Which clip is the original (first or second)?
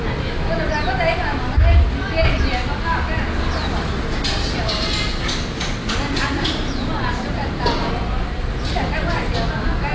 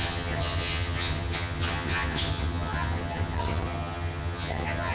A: first